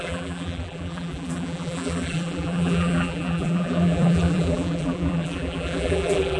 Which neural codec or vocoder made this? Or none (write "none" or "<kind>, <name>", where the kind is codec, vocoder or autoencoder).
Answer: vocoder, BigVGAN v2